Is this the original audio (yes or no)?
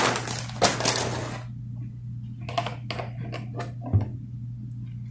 yes